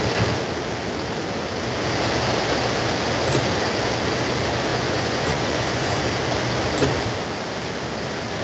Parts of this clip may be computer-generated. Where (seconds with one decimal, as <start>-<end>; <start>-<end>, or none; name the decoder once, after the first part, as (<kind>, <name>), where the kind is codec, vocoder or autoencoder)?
4.7-6.0 (vocoder, Vocos)